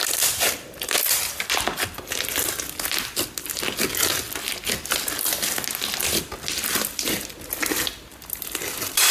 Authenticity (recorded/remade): recorded